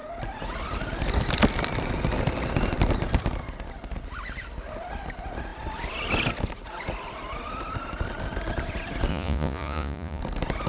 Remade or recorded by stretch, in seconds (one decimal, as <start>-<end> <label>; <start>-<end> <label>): 0.0-9.1 recorded; 9.1-10.2 remade; 10.2-10.7 recorded